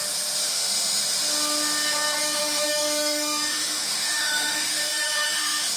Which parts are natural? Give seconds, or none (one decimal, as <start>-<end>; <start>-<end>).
0.0-0.5; 1.0-2.2